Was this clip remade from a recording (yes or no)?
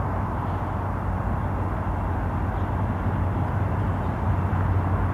no